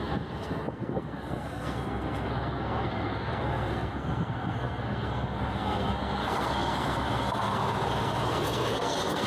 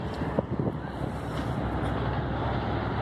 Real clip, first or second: second